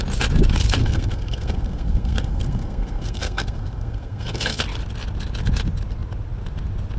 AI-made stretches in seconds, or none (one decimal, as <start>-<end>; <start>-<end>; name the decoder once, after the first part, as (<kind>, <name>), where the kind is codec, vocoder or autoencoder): 0.8-4.6 (codec, SNAC)